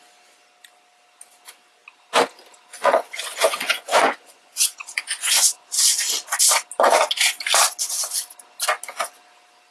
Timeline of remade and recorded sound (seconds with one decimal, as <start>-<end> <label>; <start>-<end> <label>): 0.0-2.8 recorded; 2.8-5.8 remade; 5.8-9.7 recorded